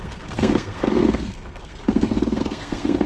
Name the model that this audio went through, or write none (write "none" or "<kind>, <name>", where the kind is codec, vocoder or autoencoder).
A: codec, SNAC